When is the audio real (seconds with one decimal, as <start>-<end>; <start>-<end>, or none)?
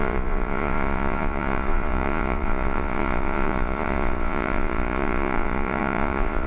none